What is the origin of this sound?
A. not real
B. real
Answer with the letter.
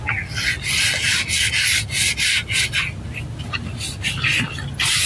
B